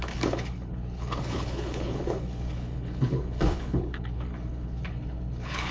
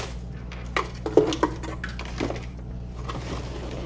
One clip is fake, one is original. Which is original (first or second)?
second